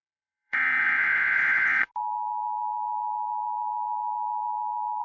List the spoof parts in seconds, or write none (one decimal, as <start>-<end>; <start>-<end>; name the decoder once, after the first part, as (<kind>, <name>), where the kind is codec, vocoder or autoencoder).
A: 0.0-1.9 (vocoder, Vocos)